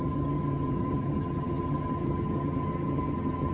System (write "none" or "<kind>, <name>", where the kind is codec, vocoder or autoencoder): vocoder, HiFi-GAN